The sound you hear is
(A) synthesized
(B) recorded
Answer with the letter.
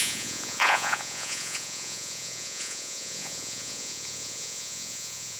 A